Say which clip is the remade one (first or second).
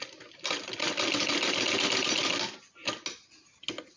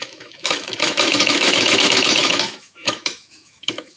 second